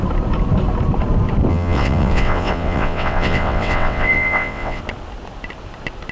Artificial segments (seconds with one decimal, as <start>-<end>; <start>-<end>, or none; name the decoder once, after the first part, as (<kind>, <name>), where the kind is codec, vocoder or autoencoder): 1.5-4.8 (vocoder, WaveNeXt)